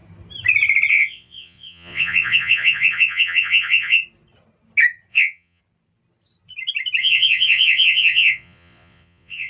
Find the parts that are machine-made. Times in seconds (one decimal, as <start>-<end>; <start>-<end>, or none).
0.9-4.0; 5.1-5.6; 7.0-9.5